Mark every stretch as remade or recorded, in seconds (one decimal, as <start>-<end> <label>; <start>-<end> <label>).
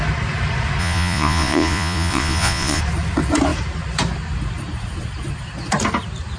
0.0-0.8 recorded; 0.8-2.8 remade; 2.8-6.4 recorded